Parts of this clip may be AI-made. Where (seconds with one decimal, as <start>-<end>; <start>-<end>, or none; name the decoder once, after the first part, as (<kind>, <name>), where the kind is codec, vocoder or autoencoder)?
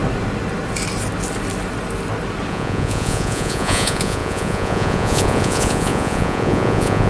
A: 2.5-7.1 (vocoder, Vocos)